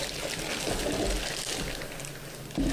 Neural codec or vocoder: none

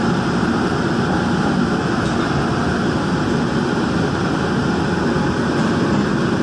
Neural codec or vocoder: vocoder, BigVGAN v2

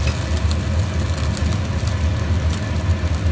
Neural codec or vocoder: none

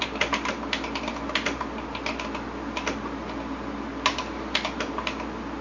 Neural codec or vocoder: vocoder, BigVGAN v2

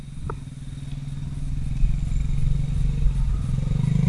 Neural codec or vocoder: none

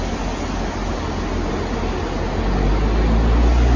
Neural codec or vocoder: none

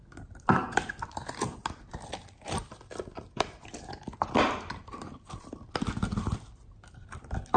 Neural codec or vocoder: none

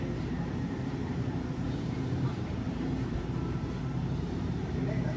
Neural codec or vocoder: vocoder, BigVGAN v2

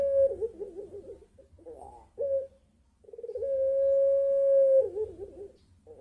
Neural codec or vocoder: none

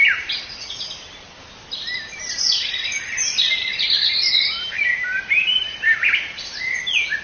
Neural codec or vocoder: vocoder, BigVGAN v2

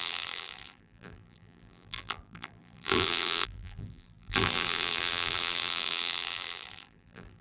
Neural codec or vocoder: vocoder, BigVGAN v2